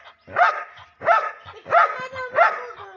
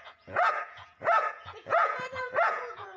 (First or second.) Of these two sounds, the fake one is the second